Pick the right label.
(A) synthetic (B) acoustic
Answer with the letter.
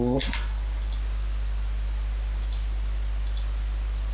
B